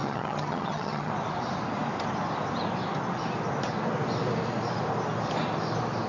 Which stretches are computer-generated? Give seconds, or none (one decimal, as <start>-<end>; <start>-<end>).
0.0-1.1